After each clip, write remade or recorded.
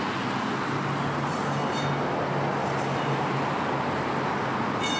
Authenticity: recorded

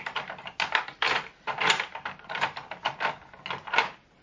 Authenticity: recorded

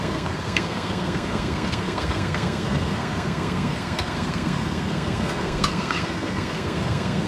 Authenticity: remade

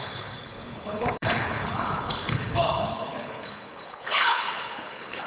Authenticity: remade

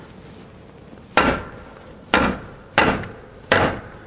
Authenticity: recorded